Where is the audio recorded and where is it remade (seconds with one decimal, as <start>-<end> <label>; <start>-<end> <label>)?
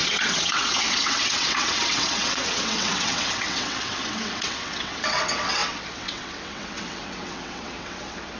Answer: 0.0-8.4 remade